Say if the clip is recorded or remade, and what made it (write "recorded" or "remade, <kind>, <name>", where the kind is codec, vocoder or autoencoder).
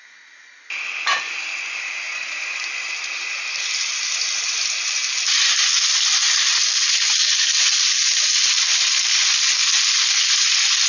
recorded